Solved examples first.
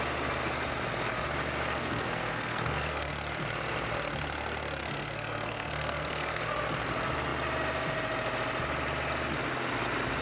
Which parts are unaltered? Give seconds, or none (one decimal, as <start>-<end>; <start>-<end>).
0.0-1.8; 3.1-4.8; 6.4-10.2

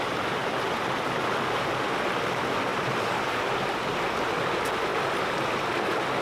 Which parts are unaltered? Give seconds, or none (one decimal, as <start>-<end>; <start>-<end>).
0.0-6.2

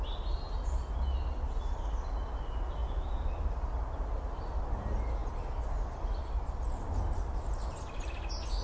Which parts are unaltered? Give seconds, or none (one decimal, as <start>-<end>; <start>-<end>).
0.0-8.6

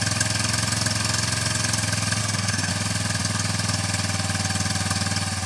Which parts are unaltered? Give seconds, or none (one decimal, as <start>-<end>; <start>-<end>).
0.0-2.2; 2.7-5.5